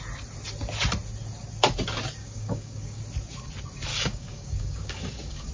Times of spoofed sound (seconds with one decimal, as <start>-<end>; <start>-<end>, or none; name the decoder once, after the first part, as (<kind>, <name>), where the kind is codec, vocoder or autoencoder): 2.2-3.0 (codec, DAC); 3.9-5.5